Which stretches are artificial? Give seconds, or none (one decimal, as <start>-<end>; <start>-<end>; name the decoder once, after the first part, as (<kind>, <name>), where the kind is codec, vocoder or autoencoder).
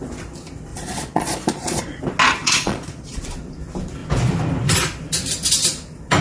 0.7-2.0 (vocoder, Vocos); 2.4-3.2